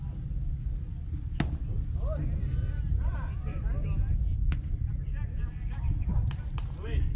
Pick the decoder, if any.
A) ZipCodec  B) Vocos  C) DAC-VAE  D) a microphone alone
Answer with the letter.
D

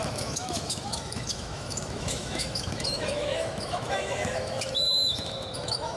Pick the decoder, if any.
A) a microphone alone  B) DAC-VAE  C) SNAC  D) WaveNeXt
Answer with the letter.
B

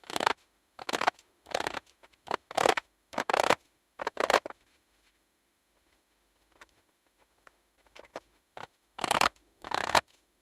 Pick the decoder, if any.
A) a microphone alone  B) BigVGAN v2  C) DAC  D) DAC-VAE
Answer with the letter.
D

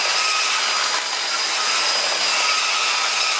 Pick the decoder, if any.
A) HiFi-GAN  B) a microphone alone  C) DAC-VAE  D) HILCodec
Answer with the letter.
B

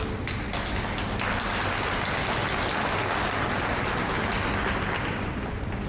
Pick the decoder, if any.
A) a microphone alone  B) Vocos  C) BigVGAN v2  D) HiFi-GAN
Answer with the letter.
A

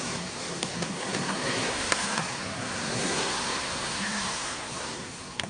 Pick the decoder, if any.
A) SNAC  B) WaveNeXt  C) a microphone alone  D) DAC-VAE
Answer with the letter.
A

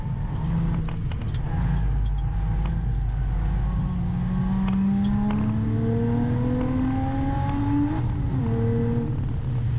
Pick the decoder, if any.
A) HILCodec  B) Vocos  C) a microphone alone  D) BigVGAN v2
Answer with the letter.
C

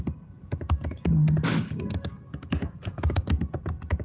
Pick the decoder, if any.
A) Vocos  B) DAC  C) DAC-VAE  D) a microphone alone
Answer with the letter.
D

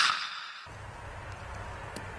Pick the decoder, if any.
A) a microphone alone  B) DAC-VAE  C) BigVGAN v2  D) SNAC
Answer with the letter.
A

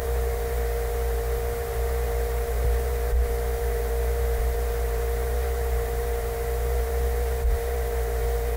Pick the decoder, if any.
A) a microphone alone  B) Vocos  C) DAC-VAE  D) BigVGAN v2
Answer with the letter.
D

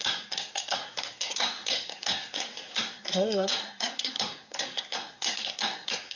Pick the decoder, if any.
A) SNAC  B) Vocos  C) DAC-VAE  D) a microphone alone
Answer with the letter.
A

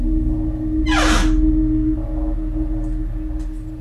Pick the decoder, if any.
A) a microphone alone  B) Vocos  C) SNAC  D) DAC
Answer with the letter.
A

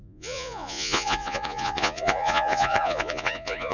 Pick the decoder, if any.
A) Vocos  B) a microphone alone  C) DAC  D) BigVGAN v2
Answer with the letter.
A